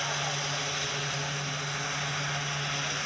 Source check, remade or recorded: recorded